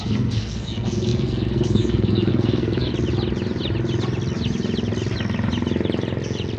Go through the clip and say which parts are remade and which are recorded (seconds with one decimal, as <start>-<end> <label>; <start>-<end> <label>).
0.0-2.9 remade; 2.9-6.6 recorded